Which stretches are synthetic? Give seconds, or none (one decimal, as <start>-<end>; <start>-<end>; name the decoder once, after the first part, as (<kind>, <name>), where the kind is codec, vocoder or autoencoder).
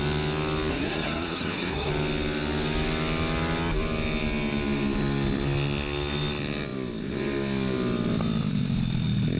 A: 0.7-1.9 (codec, SNAC)